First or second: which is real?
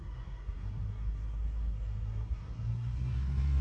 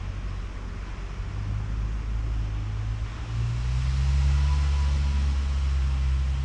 second